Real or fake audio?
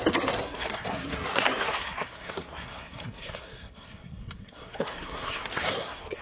fake